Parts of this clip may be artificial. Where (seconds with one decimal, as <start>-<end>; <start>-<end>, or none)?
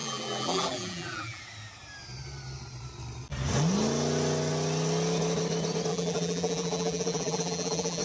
0.0-1.4; 5.9-8.0